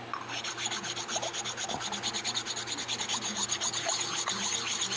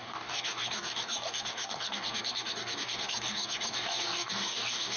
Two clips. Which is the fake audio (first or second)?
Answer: second